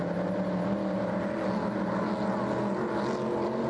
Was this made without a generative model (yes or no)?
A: yes